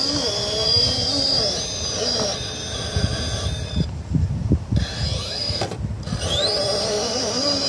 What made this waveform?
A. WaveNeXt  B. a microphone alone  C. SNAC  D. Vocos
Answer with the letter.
B